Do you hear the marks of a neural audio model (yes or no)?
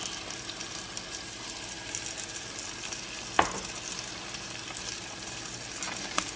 no